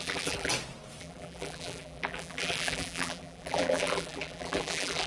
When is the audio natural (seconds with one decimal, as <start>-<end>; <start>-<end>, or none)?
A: 0.5-1.0